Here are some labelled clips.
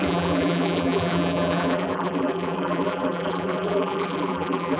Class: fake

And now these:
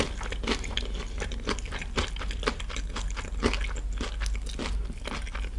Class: real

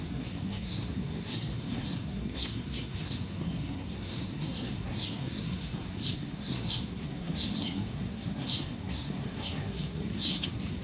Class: fake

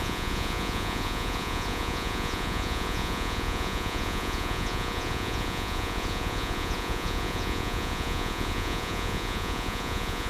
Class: fake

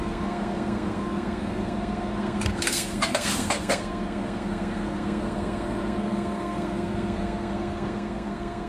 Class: fake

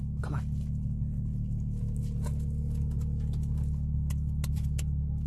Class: real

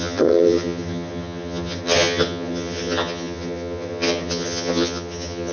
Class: fake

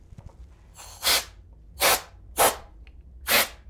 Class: real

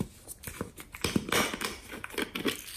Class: real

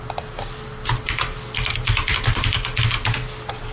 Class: real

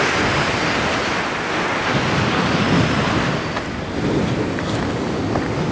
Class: real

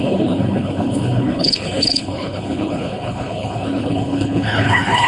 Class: fake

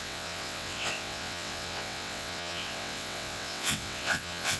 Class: fake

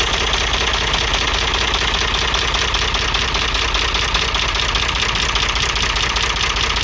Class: real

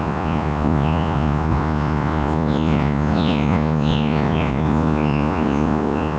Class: fake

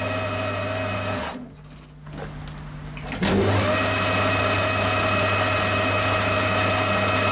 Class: real